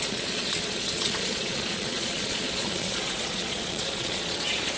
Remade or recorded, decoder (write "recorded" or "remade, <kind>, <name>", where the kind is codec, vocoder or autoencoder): remade, vocoder, Vocos